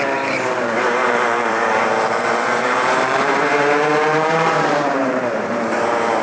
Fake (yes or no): yes